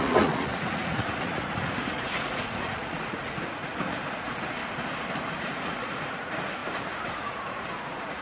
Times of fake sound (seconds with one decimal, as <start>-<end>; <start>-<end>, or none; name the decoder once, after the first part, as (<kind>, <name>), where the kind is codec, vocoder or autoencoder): 0.0-4.6 (vocoder, Vocos); 5.4-8.2